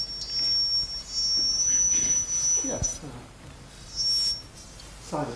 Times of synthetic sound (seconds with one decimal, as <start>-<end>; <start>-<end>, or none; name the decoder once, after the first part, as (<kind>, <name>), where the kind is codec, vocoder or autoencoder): 1.5-2.2 (vocoder, BigVGAN v2); 2.9-3.5